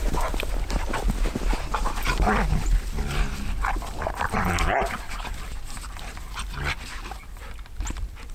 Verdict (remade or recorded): recorded